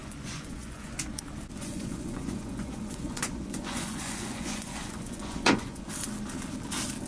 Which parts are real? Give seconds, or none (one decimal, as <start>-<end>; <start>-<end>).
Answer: 1.2-1.6; 5.9-7.1